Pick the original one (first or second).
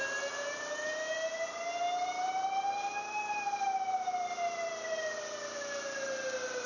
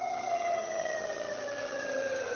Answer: first